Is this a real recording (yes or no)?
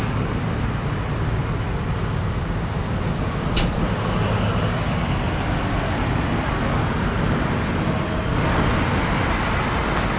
yes